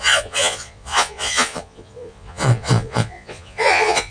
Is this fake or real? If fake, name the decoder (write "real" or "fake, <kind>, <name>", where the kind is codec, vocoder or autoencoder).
fake, vocoder, Vocos